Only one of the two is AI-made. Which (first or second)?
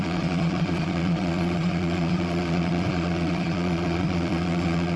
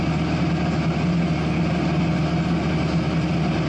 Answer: first